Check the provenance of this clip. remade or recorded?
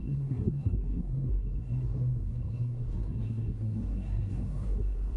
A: remade